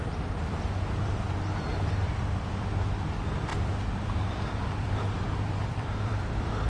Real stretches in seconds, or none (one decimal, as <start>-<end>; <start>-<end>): 0.0-1.7; 2.4-3.5